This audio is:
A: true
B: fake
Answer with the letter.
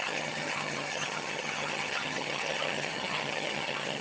B